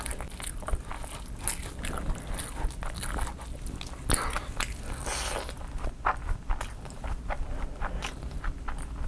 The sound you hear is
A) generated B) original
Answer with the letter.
B